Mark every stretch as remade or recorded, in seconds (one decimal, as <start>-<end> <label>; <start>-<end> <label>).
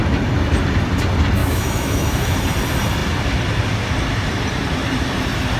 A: 0.0-1.4 recorded; 1.4-2.4 remade; 2.4-5.6 recorded